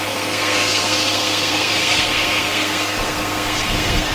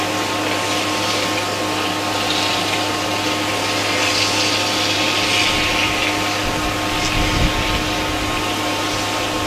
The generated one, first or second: first